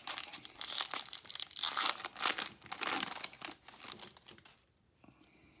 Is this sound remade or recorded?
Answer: recorded